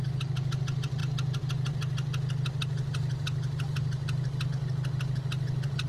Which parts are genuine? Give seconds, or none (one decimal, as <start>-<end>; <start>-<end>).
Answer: 0.0-5.9